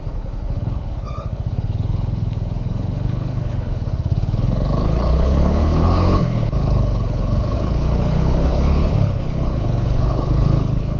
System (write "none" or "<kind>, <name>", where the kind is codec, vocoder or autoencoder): codec, HILCodec